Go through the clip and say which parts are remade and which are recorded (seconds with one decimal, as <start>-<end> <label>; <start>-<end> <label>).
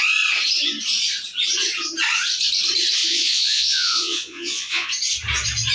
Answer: 0.0-3.0 recorded; 3.0-4.9 remade; 4.9-5.7 recorded